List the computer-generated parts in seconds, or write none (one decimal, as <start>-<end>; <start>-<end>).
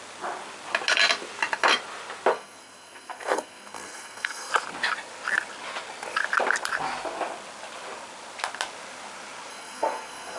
2.3-4.5; 9.5-10.4